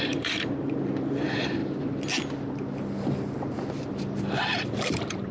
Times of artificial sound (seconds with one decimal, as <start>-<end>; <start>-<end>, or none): 0.0-1.6; 4.8-5.3